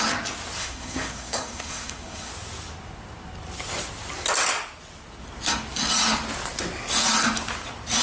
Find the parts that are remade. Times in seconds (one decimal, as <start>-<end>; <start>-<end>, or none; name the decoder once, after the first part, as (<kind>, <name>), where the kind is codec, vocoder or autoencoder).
0.6-2.3 (codec, SNAC)